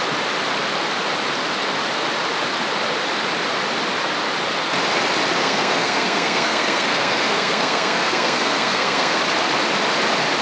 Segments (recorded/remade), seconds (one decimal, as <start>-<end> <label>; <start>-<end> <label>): 0.0-5.4 recorded; 5.4-9.2 remade; 9.2-10.4 recorded